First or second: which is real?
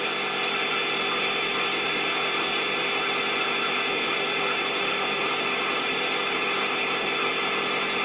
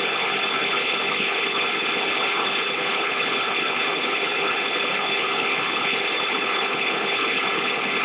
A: first